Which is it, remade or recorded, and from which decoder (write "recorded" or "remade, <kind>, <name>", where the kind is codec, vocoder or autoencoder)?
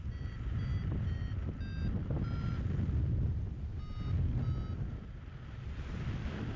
recorded